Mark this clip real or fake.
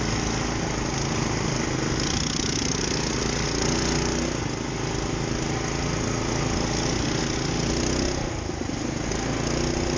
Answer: real